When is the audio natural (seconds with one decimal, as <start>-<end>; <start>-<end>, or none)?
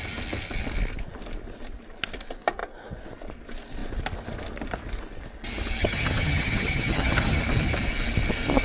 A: 0.0-5.8; 7.4-8.6